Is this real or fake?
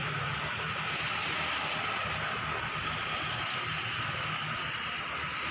real